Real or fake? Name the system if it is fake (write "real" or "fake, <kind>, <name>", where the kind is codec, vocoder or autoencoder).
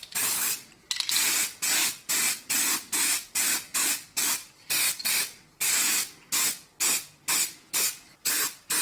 real